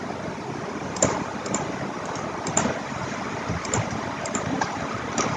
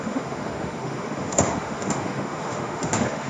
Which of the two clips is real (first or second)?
first